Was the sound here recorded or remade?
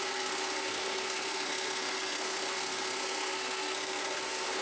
remade